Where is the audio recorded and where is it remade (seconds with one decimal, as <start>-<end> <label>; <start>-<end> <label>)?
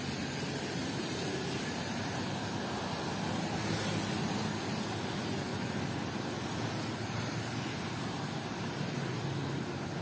0.0-10.0 recorded